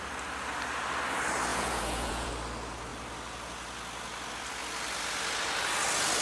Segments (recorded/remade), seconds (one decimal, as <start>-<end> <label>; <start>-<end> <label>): 0.0-1.5 recorded; 1.5-2.3 remade; 2.3-6.2 recorded